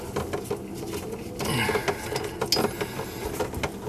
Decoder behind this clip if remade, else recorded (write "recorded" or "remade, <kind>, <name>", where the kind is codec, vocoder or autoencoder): recorded